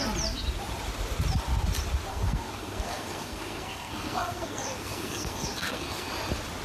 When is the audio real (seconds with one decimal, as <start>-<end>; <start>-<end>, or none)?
0.0-2.1; 6.1-6.6